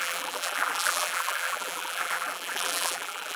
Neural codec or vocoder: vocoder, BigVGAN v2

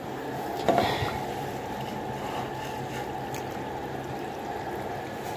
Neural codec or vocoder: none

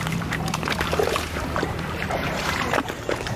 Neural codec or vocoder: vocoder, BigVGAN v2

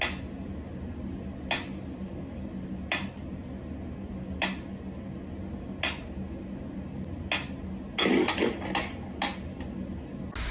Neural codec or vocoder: none